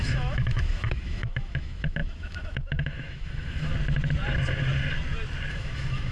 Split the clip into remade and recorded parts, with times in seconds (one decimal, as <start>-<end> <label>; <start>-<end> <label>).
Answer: 0.0-3.7 remade; 3.7-5.5 recorded; 5.5-6.1 remade